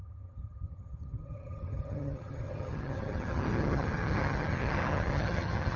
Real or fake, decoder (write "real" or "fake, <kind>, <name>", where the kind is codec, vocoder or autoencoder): fake, vocoder, HiFi-GAN